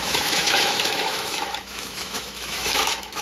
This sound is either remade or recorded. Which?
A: remade